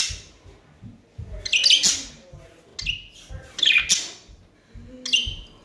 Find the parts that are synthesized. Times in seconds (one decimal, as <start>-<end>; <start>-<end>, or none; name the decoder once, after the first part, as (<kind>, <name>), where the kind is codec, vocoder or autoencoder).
none